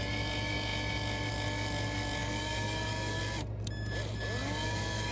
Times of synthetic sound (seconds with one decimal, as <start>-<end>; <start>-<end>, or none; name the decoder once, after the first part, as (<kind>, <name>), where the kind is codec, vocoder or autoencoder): 2.2-3.2 (codec, DAC); 4.4-5.1